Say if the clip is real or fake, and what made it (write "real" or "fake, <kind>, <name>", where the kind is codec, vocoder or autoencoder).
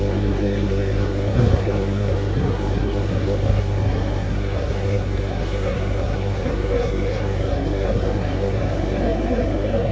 fake, codec, SNAC